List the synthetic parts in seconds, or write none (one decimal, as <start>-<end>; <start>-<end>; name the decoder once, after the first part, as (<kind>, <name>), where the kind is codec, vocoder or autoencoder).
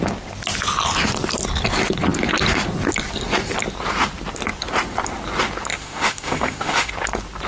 5.7-6.9 (autoencoder, DAC-VAE)